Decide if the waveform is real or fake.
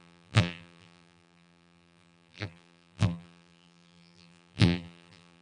fake